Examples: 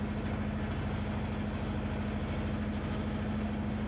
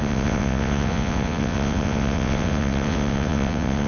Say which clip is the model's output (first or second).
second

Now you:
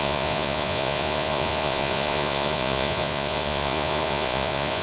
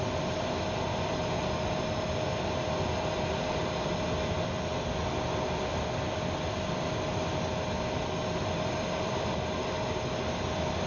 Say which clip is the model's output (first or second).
first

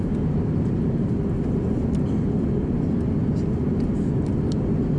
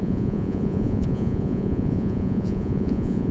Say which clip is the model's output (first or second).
second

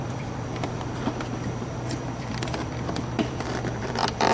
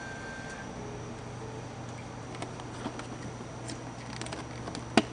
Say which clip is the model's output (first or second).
first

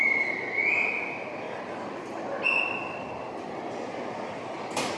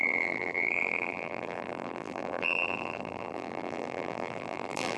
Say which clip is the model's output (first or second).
second